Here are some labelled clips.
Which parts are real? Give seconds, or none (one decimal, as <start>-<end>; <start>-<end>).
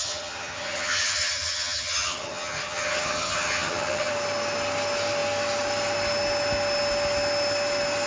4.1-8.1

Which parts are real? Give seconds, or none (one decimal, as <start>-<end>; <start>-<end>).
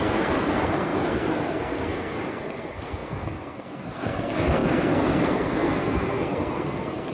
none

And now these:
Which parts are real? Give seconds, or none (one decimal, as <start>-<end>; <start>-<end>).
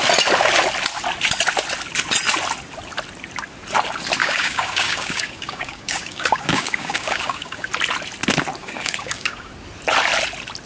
0.0-4.2; 7.7-8.6; 9.5-10.7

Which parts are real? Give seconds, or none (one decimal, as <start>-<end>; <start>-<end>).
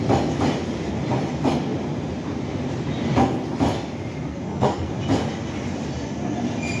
0.0-4.3; 4.9-6.8